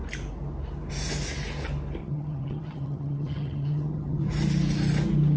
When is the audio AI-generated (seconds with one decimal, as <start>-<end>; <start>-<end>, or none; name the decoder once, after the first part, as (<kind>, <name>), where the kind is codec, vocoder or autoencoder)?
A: 2.0-4.2 (vocoder, HiFi-GAN)